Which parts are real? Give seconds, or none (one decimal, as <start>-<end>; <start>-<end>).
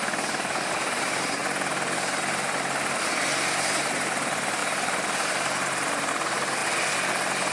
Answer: 0.0-4.6; 6.1-7.5